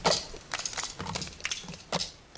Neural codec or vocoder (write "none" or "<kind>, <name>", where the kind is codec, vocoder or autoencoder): none